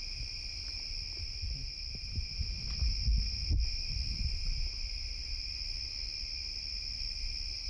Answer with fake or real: real